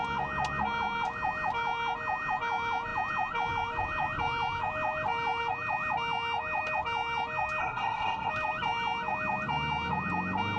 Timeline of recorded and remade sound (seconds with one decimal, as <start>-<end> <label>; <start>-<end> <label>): 0.0-7.6 recorded; 7.6-8.3 remade; 8.3-10.6 recorded